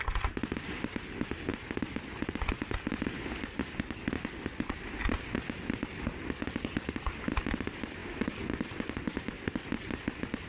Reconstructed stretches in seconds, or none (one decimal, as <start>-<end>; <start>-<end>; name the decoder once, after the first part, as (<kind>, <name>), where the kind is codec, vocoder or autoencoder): none